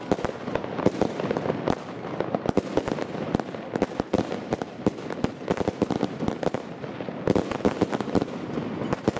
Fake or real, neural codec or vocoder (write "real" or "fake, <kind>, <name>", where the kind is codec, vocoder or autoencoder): real